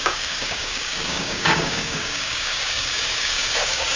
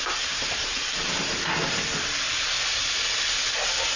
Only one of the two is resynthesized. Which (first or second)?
first